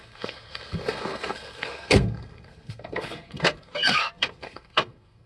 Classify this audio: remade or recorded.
remade